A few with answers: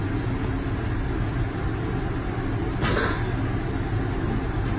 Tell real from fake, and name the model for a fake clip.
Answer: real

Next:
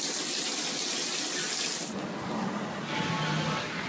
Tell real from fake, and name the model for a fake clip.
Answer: real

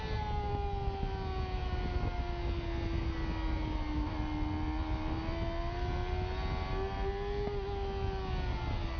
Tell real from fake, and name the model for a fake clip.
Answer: real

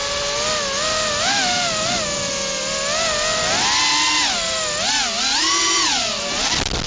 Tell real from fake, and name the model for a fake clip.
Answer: real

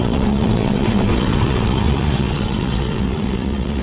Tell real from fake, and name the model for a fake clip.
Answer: fake, vocoder, WaveNeXt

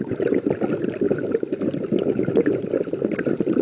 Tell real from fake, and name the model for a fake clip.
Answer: real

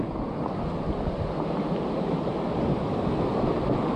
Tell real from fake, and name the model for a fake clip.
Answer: real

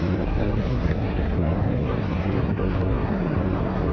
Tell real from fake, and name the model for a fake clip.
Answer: fake, codec, SNAC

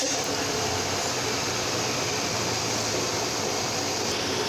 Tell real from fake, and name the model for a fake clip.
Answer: fake, vocoder, BigVGAN v2